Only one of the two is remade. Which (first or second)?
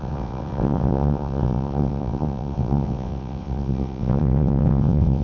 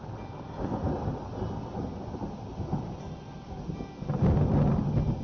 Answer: first